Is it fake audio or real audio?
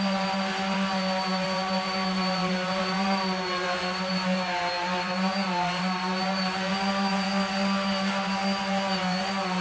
fake